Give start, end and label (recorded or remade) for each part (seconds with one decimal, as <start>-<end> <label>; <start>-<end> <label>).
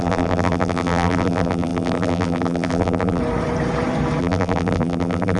0.0-3.2 remade; 3.2-4.2 recorded; 4.2-5.4 remade